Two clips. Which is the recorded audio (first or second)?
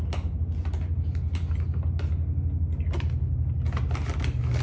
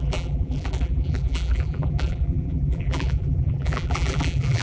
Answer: first